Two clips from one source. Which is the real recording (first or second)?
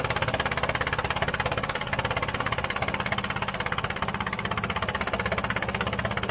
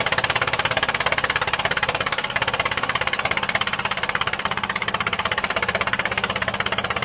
first